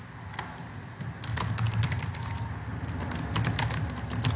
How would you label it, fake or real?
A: real